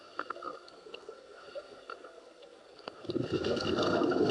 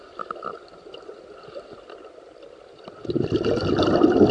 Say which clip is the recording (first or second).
second